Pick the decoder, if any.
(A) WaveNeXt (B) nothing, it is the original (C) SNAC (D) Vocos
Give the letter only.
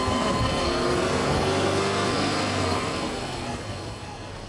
C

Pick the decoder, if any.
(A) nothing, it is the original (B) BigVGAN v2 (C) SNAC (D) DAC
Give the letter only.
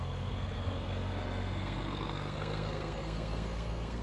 C